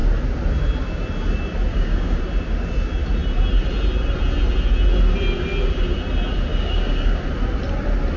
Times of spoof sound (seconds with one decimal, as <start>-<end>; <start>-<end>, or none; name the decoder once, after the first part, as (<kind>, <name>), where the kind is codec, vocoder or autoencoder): 1.7-2.2 (codec, DAC); 6.5-7.2